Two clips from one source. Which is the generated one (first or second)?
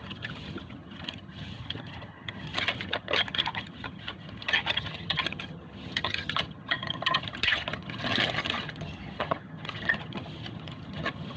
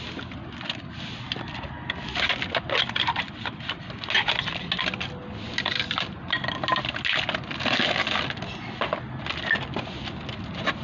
first